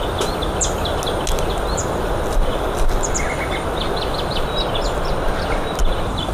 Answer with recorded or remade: recorded